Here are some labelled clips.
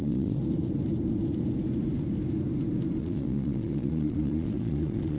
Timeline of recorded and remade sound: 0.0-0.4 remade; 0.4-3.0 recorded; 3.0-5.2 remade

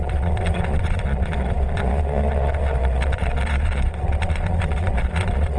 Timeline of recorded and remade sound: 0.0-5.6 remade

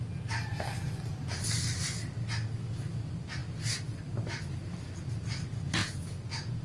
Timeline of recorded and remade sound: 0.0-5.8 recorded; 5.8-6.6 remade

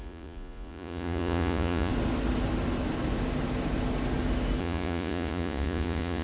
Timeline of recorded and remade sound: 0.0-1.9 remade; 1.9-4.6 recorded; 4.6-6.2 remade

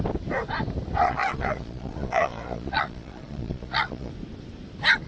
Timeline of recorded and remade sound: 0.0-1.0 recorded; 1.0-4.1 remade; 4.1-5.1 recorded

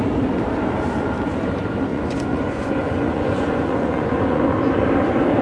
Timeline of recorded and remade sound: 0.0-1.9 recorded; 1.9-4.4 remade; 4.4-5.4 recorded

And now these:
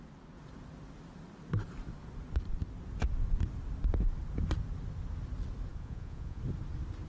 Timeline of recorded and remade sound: 0.0-5.7 recorded; 5.7-6.4 remade; 6.4-7.1 recorded

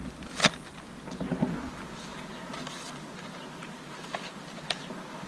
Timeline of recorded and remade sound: 0.0-5.3 recorded